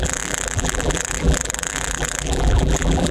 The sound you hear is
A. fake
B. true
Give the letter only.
A